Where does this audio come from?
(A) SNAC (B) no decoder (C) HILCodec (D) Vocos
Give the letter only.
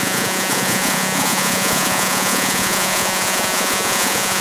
D